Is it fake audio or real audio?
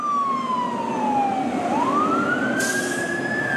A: real